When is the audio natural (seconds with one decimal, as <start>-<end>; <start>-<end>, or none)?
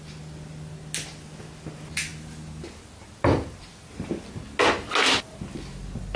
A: 0.0-6.2